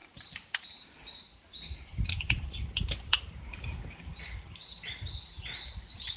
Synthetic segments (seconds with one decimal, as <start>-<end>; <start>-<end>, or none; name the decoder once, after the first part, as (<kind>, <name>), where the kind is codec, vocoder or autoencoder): 0.0-0.7 (vocoder, BigVGAN v2); 1.5-4.9